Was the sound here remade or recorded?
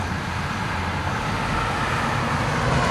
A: recorded